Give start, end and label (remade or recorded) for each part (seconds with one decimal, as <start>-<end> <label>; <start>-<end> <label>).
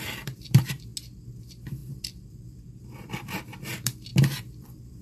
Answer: 0.0-0.9 remade; 0.9-1.4 recorded; 1.4-5.0 remade